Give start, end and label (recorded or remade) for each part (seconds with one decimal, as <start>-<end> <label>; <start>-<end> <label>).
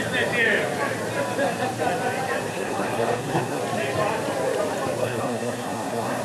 0.0-2.5 recorded; 2.5-3.6 remade; 3.6-5.0 recorded; 5.0-6.2 remade